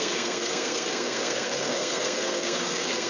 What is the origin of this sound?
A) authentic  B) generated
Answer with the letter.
B